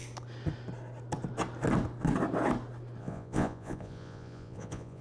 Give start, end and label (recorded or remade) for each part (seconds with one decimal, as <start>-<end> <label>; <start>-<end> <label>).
0.0-3.0 recorded; 3.0-5.0 remade